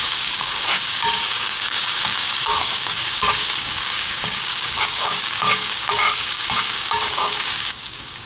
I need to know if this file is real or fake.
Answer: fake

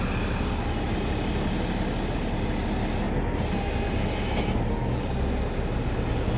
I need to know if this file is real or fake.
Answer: real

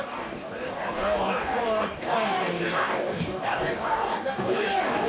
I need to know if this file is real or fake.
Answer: fake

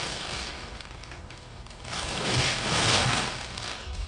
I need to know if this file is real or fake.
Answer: fake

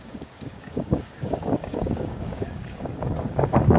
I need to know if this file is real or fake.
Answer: fake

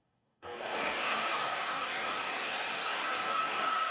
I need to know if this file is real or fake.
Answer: fake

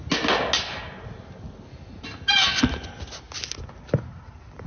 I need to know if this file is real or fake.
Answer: real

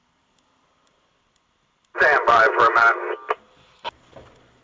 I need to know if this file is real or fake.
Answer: real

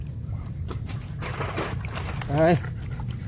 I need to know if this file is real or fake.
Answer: real